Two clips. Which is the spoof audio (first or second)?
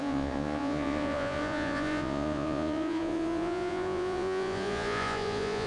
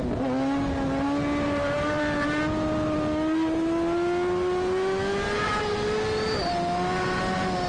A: first